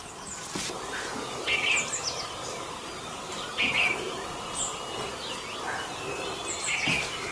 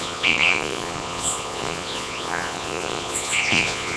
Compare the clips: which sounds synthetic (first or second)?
second